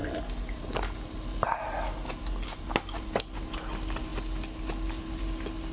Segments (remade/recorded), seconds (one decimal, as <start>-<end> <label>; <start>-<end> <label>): 0.0-5.7 recorded